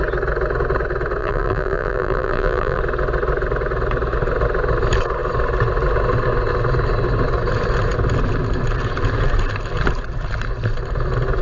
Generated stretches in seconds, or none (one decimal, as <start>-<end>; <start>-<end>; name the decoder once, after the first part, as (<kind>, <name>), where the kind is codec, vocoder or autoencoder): 1.2-2.8 (vocoder, BigVGAN v2)